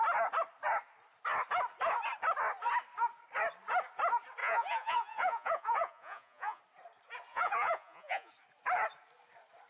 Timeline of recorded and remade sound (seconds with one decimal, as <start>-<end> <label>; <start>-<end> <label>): 0.0-4.4 recorded; 4.4-6.6 remade; 6.6-7.3 recorded; 7.3-8.3 remade; 8.3-9.7 recorded